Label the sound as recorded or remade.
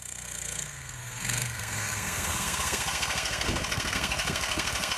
remade